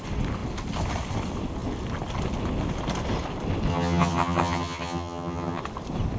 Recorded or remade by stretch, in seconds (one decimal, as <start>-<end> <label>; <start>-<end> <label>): 0.0-3.7 recorded; 3.7-5.6 remade; 5.6-6.2 recorded